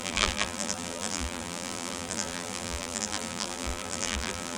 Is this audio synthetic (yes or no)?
yes